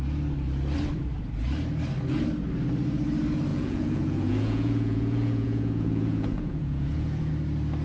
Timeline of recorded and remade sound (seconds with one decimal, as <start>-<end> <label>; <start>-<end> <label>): 0.0-3.5 recorded; 3.5-7.3 remade; 7.3-7.8 recorded